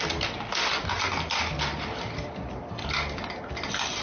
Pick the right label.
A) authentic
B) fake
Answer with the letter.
A